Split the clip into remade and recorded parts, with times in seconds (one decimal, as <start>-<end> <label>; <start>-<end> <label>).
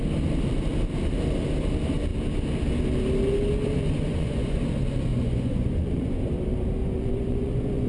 0.0-4.1 recorded; 4.1-4.6 remade; 4.6-5.1 recorded; 5.1-6.3 remade; 6.3-6.8 recorded; 6.8-7.9 remade